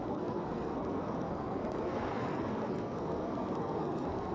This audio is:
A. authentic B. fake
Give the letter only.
B